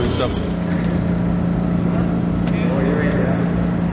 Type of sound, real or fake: real